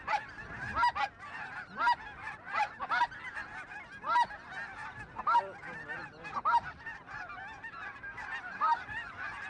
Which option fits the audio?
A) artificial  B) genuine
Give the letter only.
B